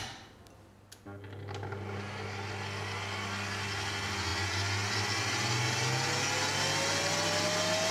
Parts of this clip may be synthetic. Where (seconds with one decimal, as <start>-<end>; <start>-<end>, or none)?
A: none